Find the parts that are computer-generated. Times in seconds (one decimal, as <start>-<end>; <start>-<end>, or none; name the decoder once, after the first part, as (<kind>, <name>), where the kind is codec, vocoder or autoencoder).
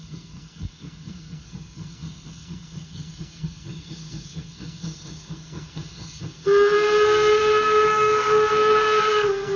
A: 0.0-9.6 (codec, SNAC)